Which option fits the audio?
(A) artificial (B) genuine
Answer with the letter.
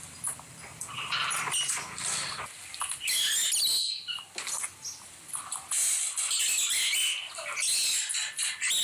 B